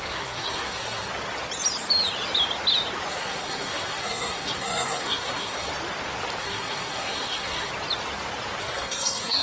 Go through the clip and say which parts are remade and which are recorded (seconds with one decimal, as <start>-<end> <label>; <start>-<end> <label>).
0.0-1.1 remade; 1.1-3.1 recorded; 3.1-5.7 remade; 5.7-6.4 recorded; 6.4-7.7 remade; 7.7-8.6 recorded; 8.6-9.4 remade